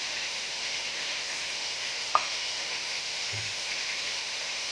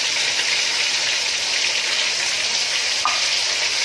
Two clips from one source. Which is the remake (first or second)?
first